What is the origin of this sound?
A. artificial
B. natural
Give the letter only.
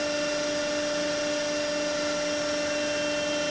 B